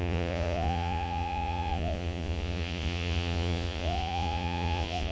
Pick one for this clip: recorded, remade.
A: remade